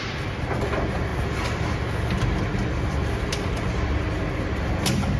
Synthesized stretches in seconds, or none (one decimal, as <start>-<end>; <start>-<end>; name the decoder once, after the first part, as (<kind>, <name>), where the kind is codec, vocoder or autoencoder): none